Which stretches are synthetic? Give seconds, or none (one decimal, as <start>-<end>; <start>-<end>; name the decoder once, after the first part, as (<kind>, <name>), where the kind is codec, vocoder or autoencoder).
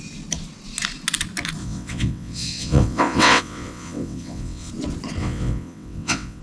1.6-4.7 (vocoder, WaveNeXt); 5.2-6.4